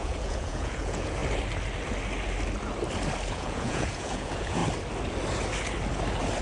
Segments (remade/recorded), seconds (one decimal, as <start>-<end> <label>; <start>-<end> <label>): 0.0-1.2 remade; 1.2-3.3 recorded; 3.3-4.6 remade; 4.6-6.4 recorded